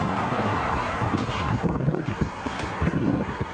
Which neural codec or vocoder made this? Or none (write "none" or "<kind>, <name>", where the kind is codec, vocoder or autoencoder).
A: codec, SNAC